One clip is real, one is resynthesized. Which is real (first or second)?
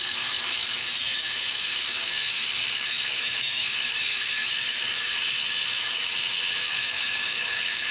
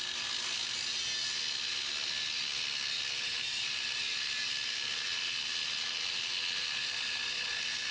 second